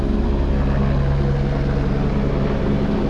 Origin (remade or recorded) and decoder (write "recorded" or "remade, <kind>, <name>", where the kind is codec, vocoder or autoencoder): recorded